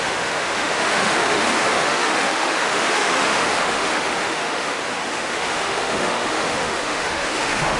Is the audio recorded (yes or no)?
no